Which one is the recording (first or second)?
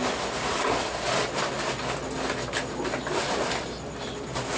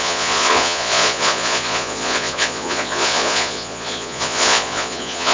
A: first